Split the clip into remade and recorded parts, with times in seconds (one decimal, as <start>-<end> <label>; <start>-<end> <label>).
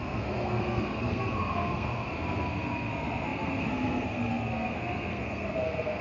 0.0-6.0 remade